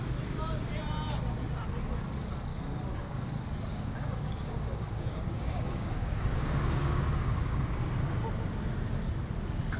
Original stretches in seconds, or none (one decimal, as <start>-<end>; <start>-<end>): 0.0-2.5; 3.3-3.7; 7.7-9.8